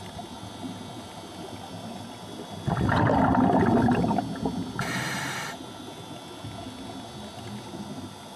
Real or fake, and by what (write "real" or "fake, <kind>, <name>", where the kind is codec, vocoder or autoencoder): real